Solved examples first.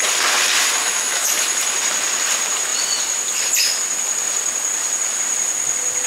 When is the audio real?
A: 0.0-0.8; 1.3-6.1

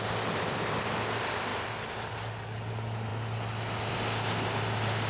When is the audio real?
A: 0.0-5.1